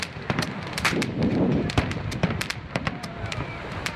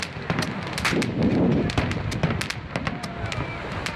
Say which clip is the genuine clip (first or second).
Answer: second